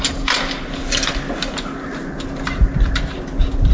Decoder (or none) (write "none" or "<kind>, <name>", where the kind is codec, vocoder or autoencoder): none